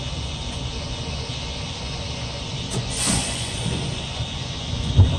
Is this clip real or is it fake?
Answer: fake